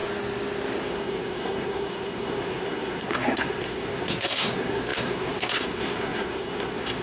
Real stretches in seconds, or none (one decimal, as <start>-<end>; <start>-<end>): 0.0-0.8